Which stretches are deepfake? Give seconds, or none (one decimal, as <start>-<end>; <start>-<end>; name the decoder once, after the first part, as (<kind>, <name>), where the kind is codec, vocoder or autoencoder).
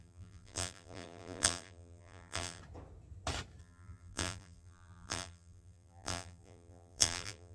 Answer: 0.0-2.6 (vocoder, BigVGAN v2); 3.6-7.5